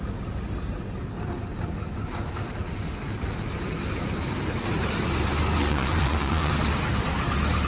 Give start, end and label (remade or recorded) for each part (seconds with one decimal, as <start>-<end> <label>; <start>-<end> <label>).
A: 0.0-5.6 recorded; 5.6-6.5 remade; 6.5-7.7 recorded